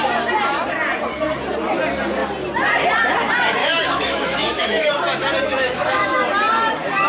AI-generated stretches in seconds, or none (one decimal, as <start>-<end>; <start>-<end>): 3.6-4.9; 5.5-6.2